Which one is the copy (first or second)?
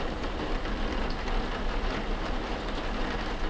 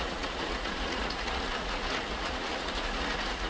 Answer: second